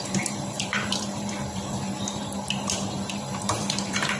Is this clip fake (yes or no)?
yes